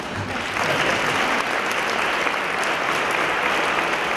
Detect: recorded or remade recorded